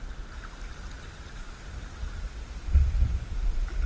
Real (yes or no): yes